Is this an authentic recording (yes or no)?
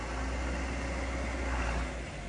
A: yes